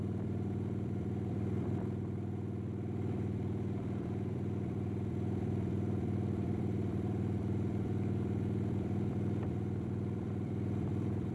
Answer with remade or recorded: remade